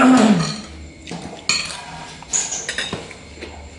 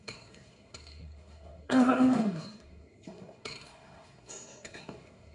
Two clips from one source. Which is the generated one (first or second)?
second